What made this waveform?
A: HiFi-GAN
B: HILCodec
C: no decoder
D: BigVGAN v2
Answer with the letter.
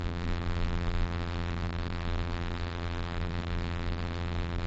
D